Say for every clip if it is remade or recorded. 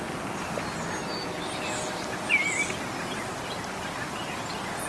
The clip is recorded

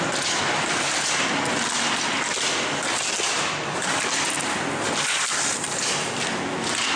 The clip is recorded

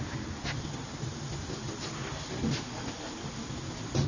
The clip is recorded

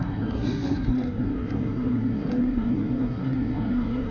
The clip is remade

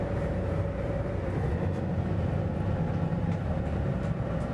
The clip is recorded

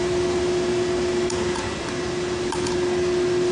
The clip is recorded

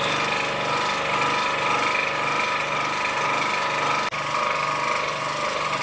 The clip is recorded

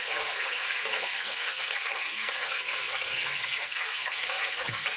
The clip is remade